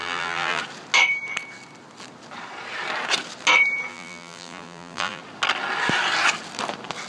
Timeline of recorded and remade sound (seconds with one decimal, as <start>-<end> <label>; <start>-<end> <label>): 0.0-0.6 remade; 0.6-3.9 recorded; 3.9-5.2 remade; 5.2-7.1 recorded